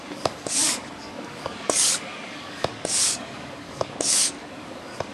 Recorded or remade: remade